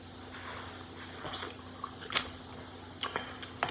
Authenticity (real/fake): real